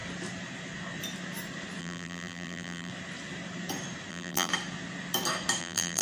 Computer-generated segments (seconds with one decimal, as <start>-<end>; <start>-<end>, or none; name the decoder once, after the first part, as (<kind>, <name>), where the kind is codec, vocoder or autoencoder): 1.8-2.9 (vocoder, BigVGAN v2); 4.1-4.5; 5.6-6.0